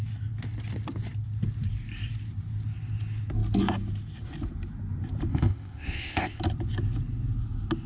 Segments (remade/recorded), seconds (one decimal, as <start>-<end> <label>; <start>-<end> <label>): 0.0-5.3 recorded; 5.3-6.4 remade; 6.4-7.9 recorded